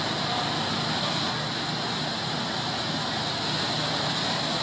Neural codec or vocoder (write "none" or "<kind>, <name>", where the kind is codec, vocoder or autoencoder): none